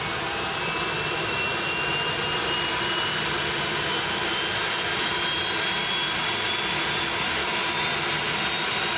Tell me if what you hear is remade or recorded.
recorded